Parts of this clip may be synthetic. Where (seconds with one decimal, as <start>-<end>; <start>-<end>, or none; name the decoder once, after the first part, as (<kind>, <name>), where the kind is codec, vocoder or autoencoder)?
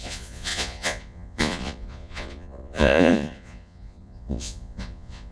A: 0.0-5.3 (vocoder, Vocos)